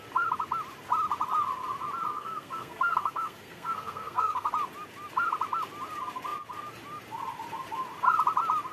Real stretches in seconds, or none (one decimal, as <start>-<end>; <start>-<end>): 0.0-2.1; 4.5-8.7